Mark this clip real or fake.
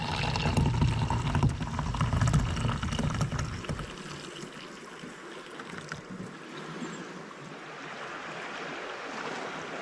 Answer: real